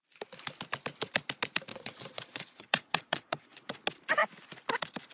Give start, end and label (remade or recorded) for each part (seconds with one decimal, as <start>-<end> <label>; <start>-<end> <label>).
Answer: 0.0-1.7 recorded; 1.7-3.8 remade; 3.8-5.1 recorded